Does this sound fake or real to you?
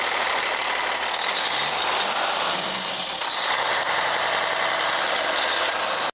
real